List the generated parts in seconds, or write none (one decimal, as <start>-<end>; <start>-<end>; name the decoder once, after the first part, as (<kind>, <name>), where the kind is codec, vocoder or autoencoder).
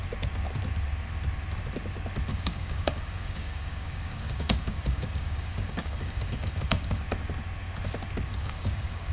2.3-7.0 (codec, DAC); 8.3-9.1